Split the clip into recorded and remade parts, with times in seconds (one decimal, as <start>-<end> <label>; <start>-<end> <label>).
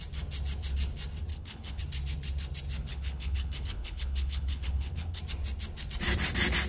0.0-1.3 recorded; 1.3-1.8 remade; 1.8-2.9 recorded; 2.9-5.2 remade; 5.2-6.7 recorded